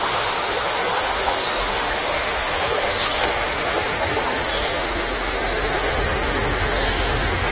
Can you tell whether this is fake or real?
fake